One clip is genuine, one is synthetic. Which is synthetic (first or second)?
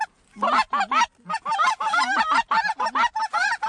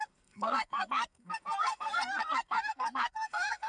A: second